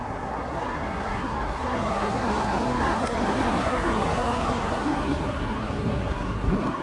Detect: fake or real fake